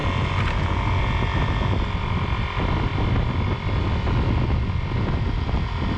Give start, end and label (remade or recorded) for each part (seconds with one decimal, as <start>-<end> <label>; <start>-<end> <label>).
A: 0.0-6.0 recorded